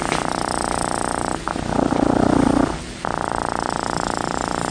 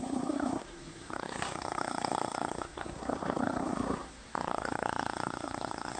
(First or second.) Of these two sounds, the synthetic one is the second